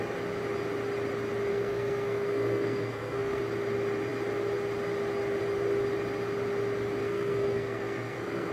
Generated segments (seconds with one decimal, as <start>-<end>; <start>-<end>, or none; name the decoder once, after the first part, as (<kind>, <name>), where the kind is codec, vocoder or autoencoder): 1.5-3.4 (codec, SNAC); 7.0-8.5